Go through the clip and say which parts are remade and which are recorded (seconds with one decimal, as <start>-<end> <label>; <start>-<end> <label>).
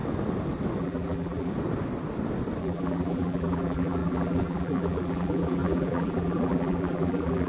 0.0-0.8 recorded; 0.8-1.5 remade; 1.5-2.6 recorded; 2.6-7.5 remade